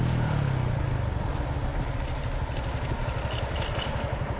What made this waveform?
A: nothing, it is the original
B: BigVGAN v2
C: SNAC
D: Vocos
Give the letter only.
A